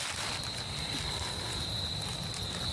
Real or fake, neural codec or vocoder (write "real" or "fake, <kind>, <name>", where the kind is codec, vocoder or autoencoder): real